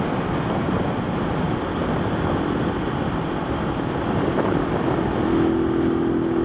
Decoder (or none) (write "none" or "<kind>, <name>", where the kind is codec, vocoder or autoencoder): none